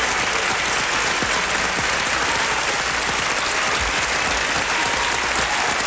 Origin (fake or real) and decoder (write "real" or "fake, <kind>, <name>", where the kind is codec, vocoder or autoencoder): real